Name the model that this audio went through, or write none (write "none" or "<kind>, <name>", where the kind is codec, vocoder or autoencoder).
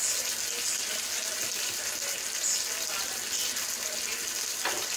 none